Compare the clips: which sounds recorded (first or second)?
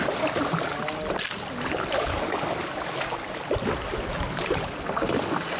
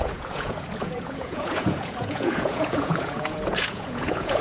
first